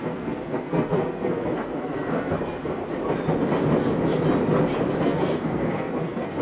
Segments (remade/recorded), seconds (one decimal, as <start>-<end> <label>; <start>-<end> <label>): 0.0-2.8 remade; 2.8-5.0 recorded; 5.0-6.4 remade